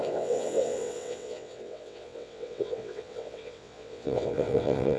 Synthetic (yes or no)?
yes